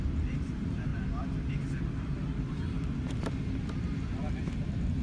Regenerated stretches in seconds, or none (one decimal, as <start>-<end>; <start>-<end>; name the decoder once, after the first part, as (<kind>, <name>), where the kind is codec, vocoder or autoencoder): 0.0-0.9 (vocoder, BigVGAN v2); 1.9-5.0